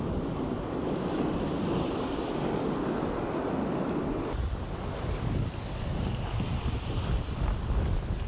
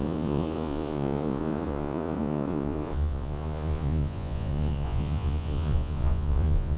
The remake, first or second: second